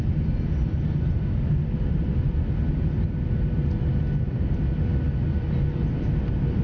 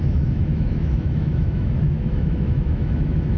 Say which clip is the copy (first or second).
second